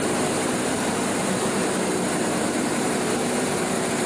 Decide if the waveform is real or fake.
fake